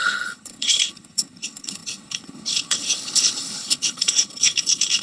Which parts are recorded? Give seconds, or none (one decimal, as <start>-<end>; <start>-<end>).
none